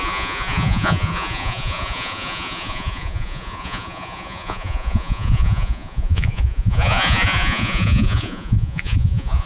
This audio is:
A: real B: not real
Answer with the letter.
B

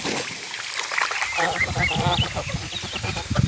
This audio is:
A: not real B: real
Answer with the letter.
B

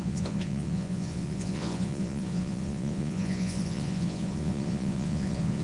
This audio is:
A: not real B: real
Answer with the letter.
A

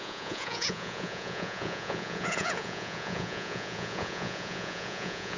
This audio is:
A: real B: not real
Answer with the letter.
B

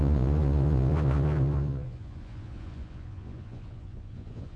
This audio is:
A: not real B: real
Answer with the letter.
A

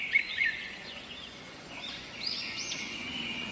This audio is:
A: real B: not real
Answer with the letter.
B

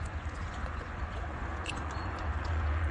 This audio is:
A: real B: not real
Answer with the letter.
B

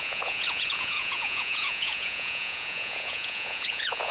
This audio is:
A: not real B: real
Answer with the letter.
A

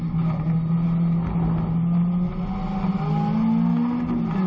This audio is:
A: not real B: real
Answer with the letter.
B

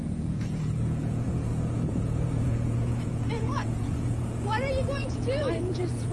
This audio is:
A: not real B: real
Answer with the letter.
A